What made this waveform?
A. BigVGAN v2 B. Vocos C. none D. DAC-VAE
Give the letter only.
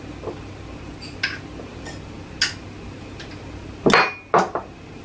C